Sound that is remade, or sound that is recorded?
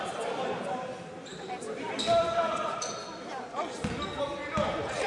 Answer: recorded